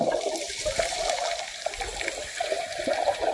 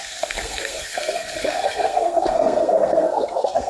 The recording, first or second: first